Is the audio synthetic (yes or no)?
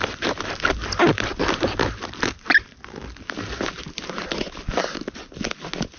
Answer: no